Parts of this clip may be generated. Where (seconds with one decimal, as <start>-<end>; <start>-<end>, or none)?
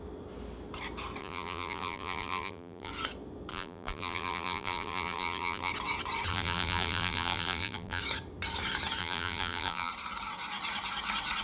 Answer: 1.2-2.9; 3.5-5.7; 6.3-8.0; 9.0-9.9